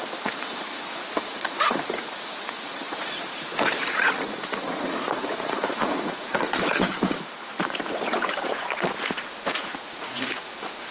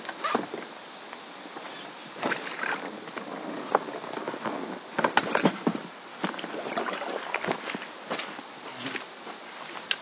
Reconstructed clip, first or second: first